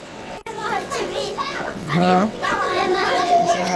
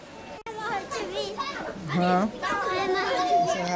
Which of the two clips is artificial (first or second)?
first